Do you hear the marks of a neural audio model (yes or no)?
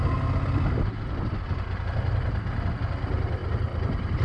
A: no